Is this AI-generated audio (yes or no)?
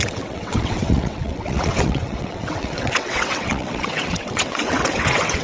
yes